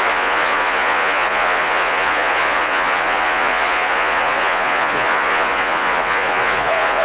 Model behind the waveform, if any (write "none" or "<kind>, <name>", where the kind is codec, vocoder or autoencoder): vocoder, Vocos